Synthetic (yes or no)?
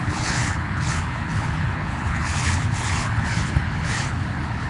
yes